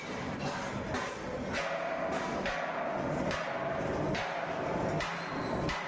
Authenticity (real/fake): real